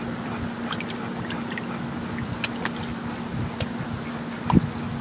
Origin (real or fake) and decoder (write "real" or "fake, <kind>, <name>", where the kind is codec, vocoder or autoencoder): real